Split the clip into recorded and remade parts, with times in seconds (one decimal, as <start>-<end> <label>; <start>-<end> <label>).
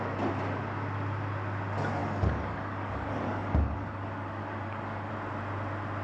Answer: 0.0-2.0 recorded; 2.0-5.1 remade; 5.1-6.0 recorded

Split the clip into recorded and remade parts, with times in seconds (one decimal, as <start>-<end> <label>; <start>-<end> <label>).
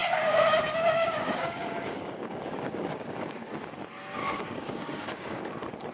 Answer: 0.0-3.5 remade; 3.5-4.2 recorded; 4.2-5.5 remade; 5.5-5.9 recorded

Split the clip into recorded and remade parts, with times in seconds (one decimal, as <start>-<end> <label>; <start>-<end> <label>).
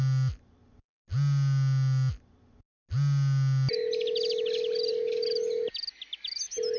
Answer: 0.0-6.8 recorded